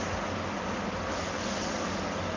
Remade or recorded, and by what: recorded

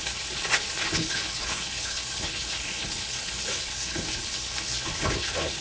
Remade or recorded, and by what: remade, codec, HILCodec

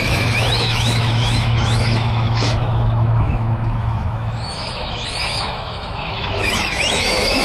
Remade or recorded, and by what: remade, autoencoder, DAC-VAE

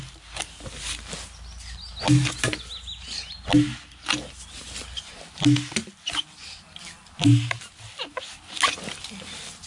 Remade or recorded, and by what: recorded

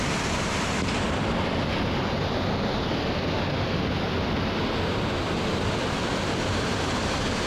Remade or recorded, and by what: recorded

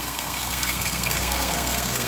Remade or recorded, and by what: remade, codec, SNAC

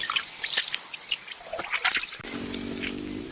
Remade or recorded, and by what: recorded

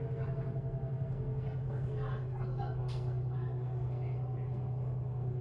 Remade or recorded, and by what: remade, codec, SNAC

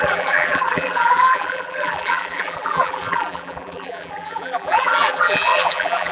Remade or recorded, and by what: remade, vocoder, BigVGAN v2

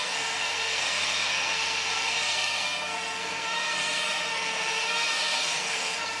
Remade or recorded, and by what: remade, codec, SNAC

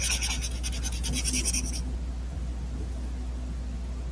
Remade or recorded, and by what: recorded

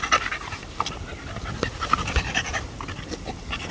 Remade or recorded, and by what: recorded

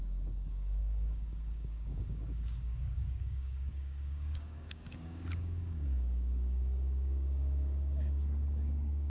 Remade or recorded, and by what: remade, codec, DAC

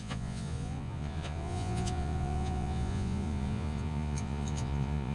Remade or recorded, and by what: remade, vocoder, Vocos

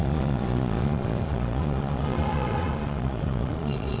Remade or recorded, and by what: remade, vocoder, Vocos